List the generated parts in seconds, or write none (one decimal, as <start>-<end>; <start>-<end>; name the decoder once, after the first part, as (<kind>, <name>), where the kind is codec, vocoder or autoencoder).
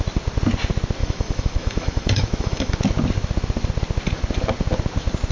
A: 1.0-2.7 (autoencoder, DAC-VAE)